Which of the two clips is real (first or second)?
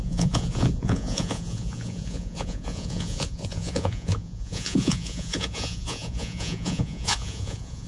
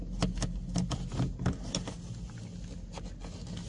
second